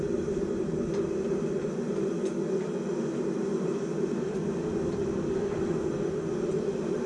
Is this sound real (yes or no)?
yes